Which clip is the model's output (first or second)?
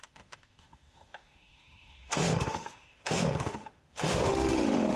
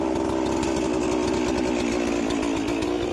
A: first